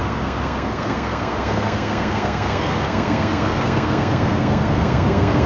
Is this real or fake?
fake